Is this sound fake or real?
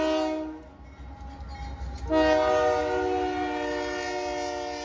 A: real